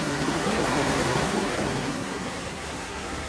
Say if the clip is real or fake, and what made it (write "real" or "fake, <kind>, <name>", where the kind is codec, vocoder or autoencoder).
fake, codec, SNAC